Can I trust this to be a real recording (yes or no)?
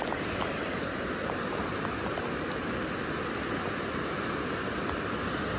yes